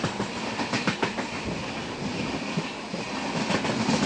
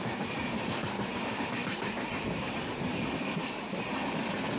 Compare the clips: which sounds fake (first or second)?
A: second